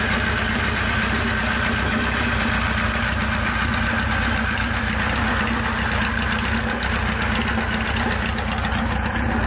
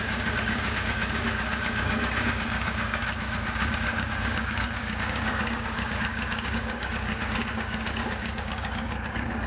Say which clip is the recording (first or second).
first